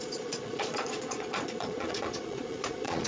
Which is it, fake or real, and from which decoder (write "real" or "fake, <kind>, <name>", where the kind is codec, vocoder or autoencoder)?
fake, vocoder, Vocos